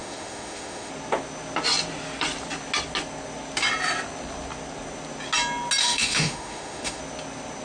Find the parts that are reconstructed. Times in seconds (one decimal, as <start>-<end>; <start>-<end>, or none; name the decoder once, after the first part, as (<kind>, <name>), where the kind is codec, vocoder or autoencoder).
0.0-0.9 (autoencoder, DAC-VAE); 5.8-7.0